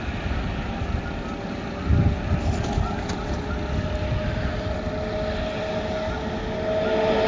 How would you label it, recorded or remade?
recorded